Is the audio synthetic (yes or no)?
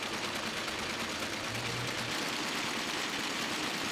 no